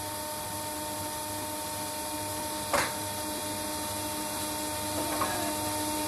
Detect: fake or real real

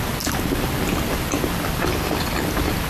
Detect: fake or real real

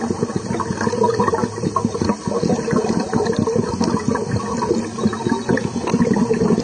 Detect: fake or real real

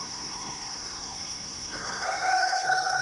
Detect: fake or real fake